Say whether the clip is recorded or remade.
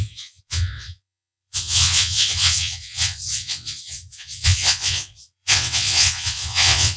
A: remade